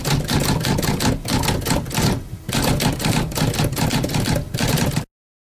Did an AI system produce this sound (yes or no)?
no